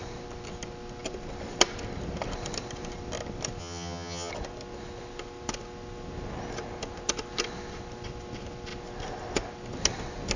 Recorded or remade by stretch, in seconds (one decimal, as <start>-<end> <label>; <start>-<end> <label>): 0.0-3.6 recorded; 3.6-4.3 remade; 4.3-10.4 recorded